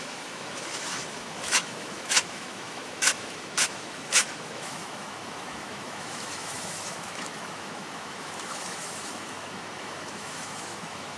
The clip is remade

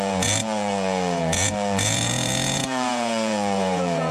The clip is remade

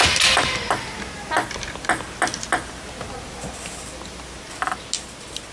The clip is recorded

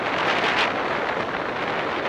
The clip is recorded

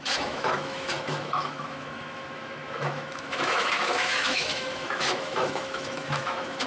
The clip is remade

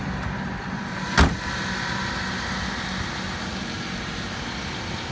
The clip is recorded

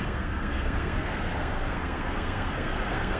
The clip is remade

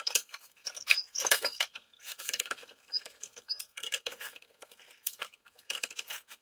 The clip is remade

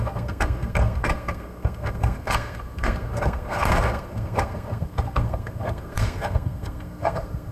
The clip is remade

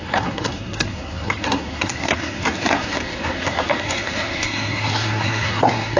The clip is remade